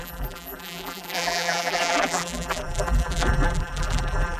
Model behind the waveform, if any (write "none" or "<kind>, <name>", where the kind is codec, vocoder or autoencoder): vocoder, BigVGAN v2